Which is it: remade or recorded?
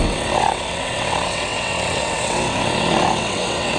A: remade